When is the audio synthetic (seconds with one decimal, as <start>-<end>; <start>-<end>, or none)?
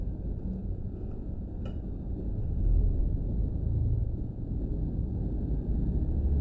0.6-1.5; 3.8-4.6